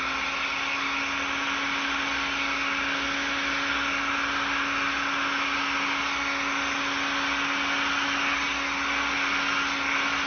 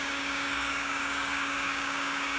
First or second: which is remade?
second